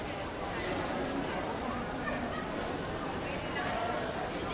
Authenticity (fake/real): real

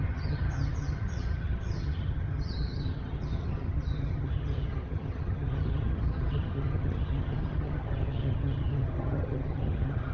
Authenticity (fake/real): fake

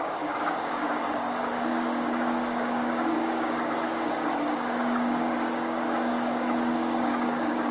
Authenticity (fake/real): fake